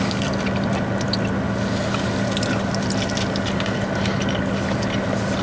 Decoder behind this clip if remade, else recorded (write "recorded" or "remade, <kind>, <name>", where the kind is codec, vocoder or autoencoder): recorded